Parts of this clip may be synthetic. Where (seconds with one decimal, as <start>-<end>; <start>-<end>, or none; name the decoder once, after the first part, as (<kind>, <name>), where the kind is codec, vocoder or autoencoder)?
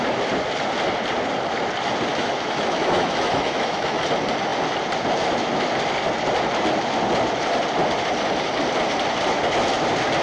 2.1-4.0 (autoencoder, DAC-VAE)